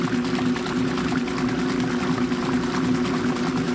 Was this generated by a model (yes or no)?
no